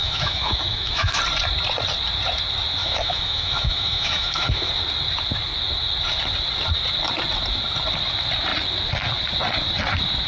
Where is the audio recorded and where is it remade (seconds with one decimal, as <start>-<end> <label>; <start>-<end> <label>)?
0.0-1.2 remade; 1.2-2.8 recorded; 2.8-4.7 remade; 4.7-10.3 recorded